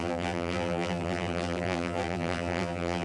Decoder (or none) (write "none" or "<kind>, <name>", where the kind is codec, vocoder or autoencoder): vocoder, BigVGAN v2